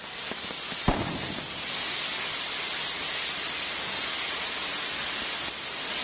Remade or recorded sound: recorded